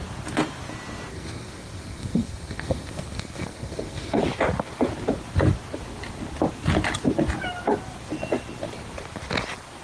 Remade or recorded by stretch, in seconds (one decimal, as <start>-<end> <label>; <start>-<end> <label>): 0.0-1.1 recorded; 1.1-4.2 remade; 4.2-9.8 recorded